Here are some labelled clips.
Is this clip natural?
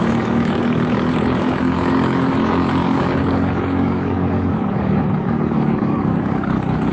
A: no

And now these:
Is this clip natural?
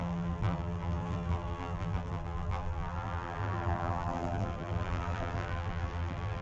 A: no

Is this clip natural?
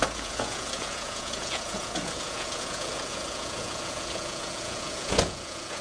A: no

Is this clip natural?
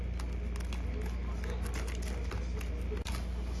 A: yes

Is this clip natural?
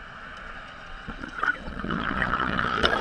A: no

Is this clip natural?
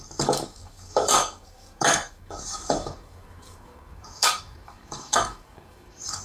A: no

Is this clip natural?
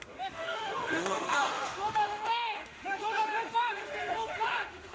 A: no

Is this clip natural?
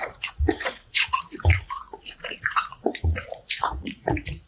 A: no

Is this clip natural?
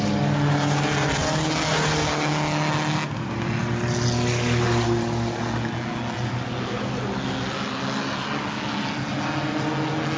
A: yes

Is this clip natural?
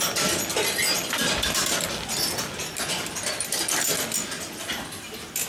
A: yes